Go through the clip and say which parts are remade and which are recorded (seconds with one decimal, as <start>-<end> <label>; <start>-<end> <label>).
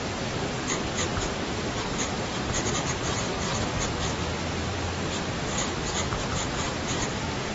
0.0-2.0 recorded; 2.0-3.3 remade; 3.3-5.9 recorded; 5.9-7.5 remade